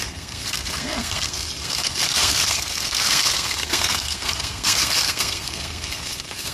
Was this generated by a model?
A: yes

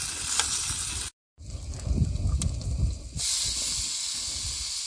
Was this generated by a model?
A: no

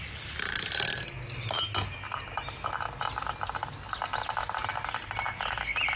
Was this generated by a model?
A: no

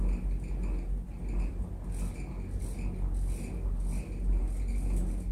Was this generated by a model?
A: no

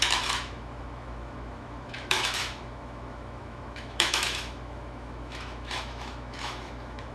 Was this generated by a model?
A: yes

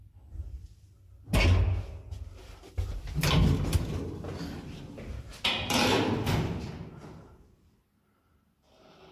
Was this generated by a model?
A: no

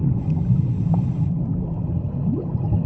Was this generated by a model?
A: no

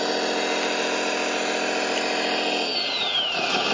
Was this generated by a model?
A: no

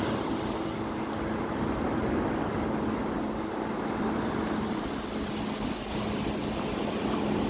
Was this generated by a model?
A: no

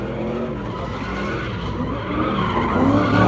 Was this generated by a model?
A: no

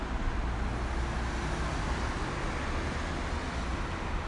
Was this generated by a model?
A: no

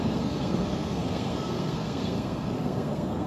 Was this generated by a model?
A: yes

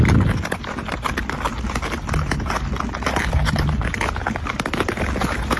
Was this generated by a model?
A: no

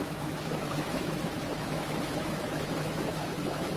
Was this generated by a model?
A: yes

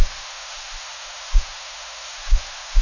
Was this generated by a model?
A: yes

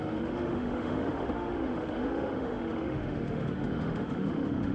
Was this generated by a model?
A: yes